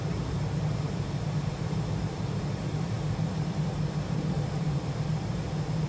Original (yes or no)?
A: no